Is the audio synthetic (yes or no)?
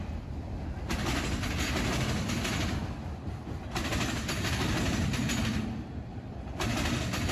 no